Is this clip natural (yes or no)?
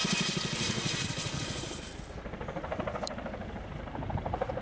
no